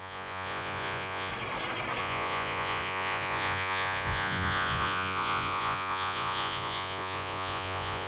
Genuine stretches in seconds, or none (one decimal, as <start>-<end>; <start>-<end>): 1.3-2.0